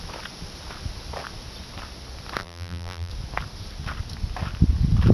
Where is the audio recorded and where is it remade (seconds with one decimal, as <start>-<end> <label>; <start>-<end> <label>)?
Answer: 0.0-2.4 recorded; 2.4-3.1 remade; 3.1-5.1 recorded